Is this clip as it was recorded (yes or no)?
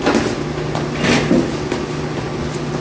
yes